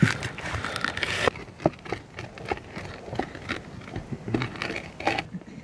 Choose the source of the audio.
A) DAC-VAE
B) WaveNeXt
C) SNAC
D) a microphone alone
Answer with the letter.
D